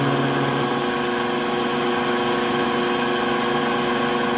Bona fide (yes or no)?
yes